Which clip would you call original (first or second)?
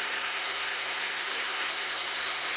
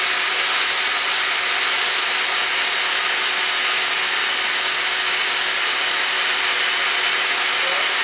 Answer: second